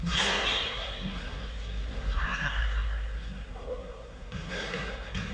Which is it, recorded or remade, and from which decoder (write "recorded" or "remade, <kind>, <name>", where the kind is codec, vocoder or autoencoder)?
remade, codec, SNAC